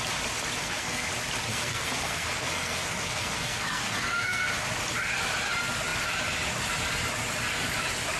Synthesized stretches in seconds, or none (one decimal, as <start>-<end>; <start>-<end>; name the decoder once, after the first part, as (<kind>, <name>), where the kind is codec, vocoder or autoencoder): 0.6-1.1 (codec, SNAC); 1.5-4.5